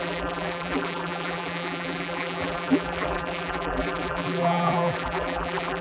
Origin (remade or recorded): remade